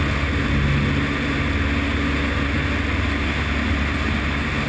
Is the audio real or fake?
real